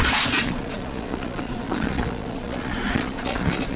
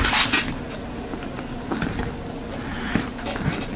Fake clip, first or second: first